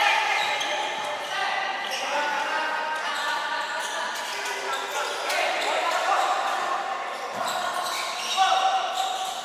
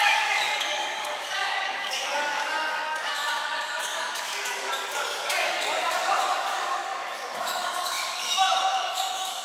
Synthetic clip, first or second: second